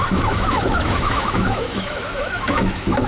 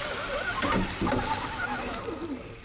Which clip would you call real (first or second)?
second